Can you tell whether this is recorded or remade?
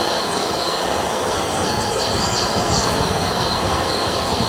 remade